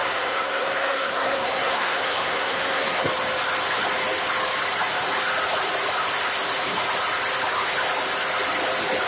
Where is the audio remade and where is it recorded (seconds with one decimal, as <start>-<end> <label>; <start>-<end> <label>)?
0.0-3.1 remade; 3.1-9.1 recorded